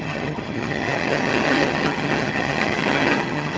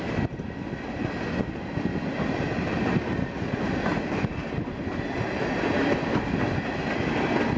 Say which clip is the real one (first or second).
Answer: second